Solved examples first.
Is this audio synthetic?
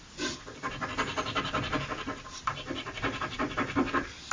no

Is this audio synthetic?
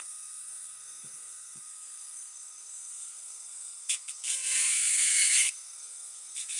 yes